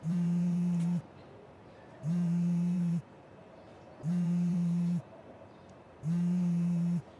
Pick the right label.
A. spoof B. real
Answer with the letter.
A